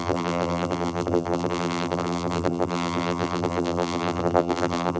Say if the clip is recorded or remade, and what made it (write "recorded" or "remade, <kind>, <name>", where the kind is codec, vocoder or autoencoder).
remade, vocoder, BigVGAN v2